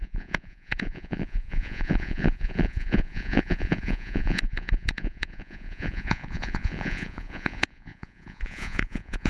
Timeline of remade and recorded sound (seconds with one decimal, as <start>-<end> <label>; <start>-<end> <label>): 0.0-9.3 remade